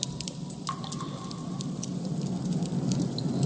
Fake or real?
real